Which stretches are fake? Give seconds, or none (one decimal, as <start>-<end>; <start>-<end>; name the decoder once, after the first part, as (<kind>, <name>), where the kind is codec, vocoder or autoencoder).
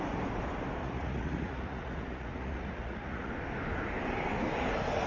0.8-3.3 (vocoder, Vocos)